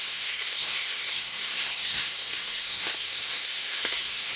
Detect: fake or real fake